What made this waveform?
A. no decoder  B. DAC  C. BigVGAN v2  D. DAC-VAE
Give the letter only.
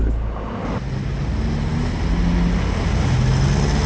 A